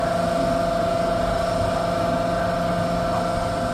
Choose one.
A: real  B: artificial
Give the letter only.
A